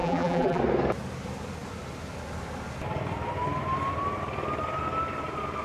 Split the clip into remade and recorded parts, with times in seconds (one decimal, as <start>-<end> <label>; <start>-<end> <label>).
0.0-0.6 remade; 0.6-5.6 recorded